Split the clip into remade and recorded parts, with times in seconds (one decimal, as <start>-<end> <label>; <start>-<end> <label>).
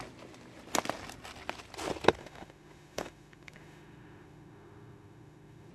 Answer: 0.0-2.2 recorded; 2.2-5.7 remade